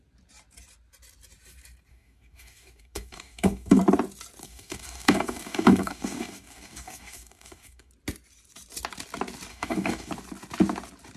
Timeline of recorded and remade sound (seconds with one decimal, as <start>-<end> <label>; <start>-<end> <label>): 0.0-1.9 recorded; 1.9-3.8 remade; 3.8-4.4 recorded; 4.4-7.9 remade; 7.9-9.5 recorded; 9.5-10.1 remade; 10.1-11.2 recorded